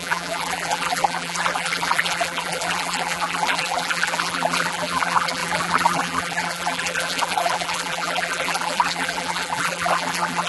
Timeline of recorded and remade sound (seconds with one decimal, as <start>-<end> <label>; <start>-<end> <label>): 0.0-10.5 remade